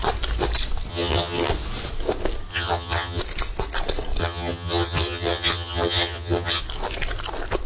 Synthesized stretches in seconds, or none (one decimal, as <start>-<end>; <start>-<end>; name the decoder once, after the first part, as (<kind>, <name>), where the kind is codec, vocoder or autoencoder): 0.9-1.5 (vocoder, HiFi-GAN); 2.5-3.2; 4.2-6.6